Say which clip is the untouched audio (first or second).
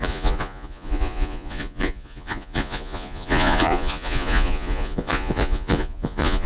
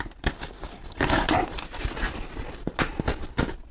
second